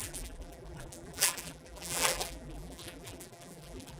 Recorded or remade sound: remade